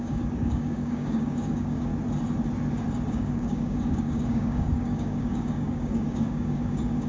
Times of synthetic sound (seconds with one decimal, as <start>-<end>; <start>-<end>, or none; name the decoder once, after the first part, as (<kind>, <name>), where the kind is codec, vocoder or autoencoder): 0.0-1.9 (codec, DAC); 3.1-7.1